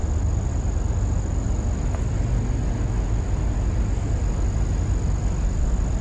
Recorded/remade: recorded